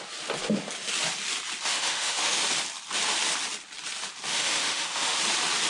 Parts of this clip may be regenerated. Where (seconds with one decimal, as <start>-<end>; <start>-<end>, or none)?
1.7-2.4; 4.3-5.2